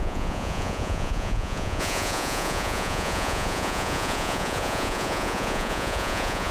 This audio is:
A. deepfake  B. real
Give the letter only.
A